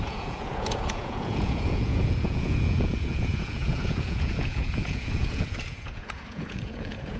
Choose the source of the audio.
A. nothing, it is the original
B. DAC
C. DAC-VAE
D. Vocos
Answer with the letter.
D